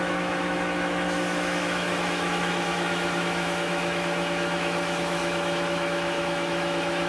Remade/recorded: remade